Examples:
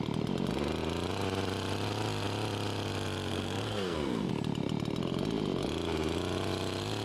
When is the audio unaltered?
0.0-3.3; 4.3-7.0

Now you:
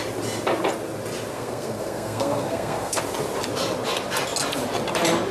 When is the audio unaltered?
0.0-1.3; 3.0-5.3

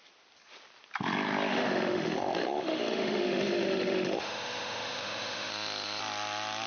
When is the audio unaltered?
0.0-1.5; 5.5-6.7

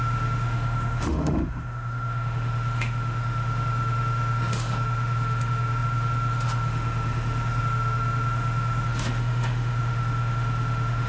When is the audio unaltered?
none

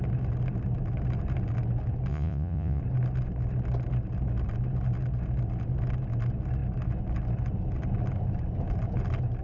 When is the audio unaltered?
0.0-2.1; 2.8-9.4

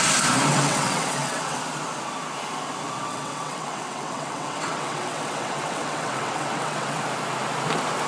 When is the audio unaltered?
0.0-0.5; 1.6-3.1; 7.0-8.1